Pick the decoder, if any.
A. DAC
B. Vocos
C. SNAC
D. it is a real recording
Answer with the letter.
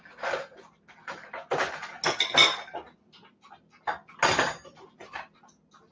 D